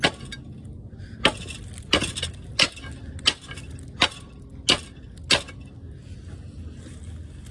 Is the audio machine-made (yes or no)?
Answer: no